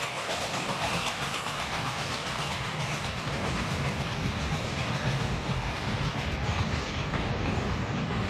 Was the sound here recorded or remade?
remade